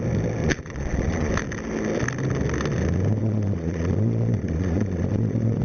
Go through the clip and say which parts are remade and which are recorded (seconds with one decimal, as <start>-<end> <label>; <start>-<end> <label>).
0.0-0.4 recorded; 0.4-1.3 remade; 1.3-3.2 recorded; 3.2-5.6 remade